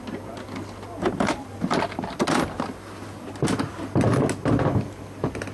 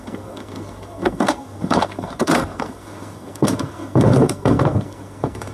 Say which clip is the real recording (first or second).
first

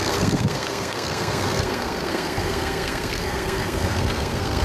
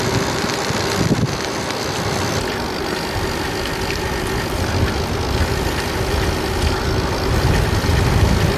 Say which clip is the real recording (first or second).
second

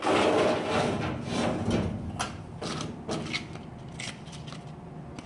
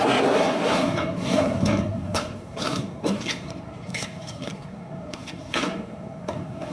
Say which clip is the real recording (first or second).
first